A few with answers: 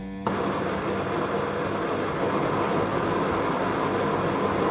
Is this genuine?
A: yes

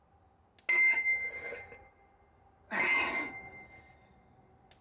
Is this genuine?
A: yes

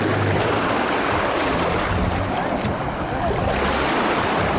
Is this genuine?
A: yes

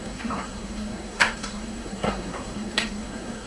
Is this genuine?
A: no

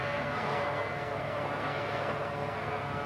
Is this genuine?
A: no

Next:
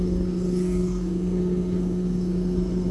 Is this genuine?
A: no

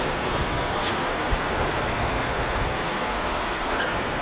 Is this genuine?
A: no